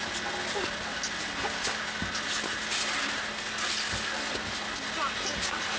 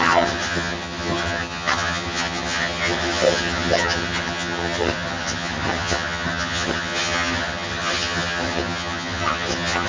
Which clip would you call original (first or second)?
first